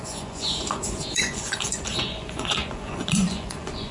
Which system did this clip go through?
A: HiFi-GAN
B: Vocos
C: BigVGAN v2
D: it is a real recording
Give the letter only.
B